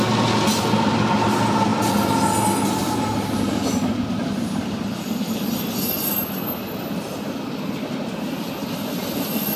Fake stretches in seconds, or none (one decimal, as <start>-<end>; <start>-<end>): none